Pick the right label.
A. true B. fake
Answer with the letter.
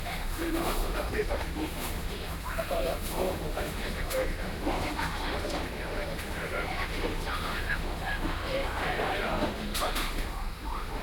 B